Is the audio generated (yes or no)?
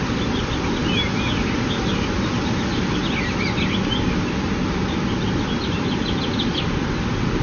no